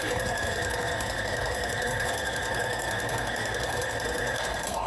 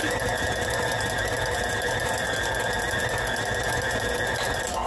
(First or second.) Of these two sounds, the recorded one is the second